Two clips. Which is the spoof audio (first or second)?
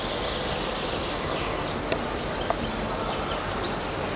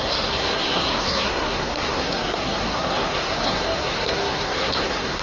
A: second